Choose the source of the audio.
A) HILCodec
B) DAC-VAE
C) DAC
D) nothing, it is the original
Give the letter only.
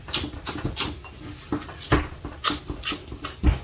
D